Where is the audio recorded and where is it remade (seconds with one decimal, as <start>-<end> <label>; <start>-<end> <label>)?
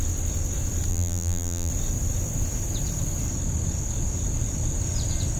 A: 0.0-0.9 recorded; 0.9-1.7 remade; 1.7-5.4 recorded